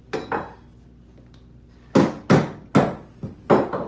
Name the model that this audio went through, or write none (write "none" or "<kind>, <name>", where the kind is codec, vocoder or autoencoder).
none